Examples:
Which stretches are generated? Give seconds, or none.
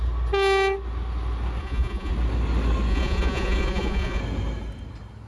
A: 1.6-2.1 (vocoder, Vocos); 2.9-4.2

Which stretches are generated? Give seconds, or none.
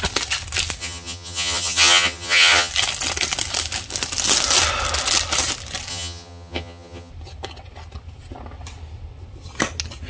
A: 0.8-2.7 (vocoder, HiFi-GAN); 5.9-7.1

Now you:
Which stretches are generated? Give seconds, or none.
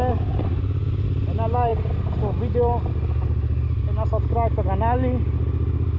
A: none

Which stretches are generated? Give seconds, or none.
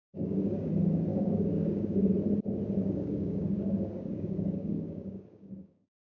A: 0.0-0.7 (codec, DAC); 1.1-2.1; 2.8-6.1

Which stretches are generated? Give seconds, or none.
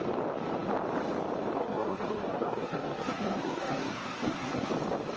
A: 1.6-4.7 (codec, SNAC)